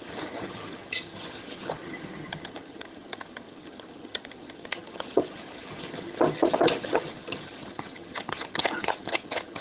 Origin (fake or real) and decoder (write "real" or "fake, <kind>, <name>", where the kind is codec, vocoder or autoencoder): fake, vocoder, HiFi-GAN